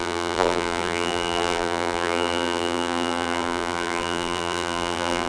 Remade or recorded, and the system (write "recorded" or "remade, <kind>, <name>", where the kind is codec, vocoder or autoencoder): remade, vocoder, BigVGAN v2